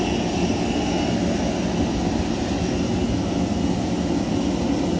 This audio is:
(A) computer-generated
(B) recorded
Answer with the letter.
B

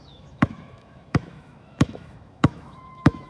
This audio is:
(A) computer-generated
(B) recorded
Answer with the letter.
A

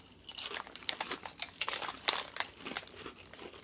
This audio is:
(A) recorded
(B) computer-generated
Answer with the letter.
A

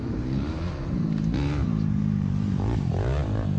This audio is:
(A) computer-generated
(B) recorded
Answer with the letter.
A